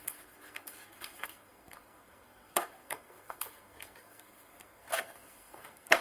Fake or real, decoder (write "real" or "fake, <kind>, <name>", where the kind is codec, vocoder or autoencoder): fake, codec, SNAC